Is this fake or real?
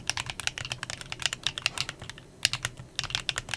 real